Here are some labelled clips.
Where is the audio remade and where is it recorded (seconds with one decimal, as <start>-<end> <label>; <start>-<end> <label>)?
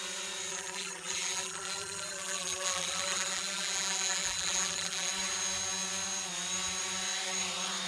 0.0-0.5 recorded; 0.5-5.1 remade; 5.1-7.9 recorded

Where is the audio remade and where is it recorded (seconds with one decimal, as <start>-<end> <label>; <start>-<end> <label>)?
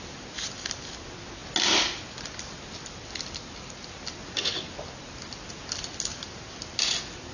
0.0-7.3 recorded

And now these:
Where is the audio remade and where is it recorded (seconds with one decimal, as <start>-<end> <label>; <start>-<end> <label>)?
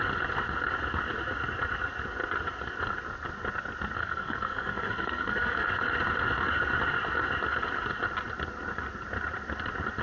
0.0-4.0 recorded; 4.0-5.7 remade; 5.7-10.0 recorded